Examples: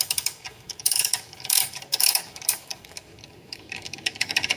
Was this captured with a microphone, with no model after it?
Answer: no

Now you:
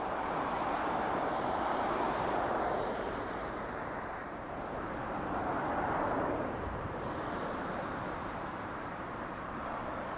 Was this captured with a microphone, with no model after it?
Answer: no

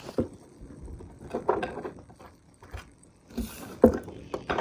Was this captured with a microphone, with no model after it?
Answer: no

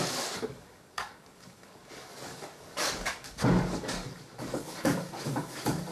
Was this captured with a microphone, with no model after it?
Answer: no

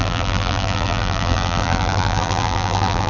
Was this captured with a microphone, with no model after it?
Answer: no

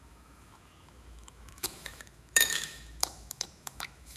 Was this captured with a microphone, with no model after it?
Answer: no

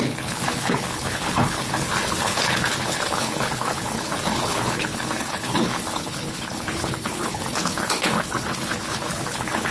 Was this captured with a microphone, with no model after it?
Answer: no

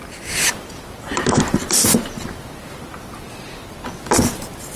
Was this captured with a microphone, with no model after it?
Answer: yes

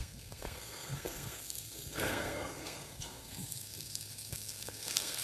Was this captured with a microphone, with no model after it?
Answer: no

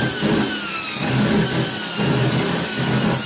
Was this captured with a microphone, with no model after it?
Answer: yes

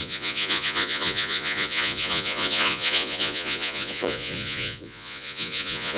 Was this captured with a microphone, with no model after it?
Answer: no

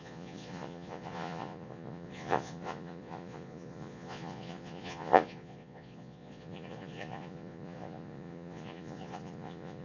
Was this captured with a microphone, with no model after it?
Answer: no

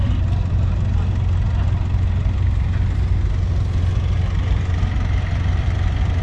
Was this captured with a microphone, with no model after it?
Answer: yes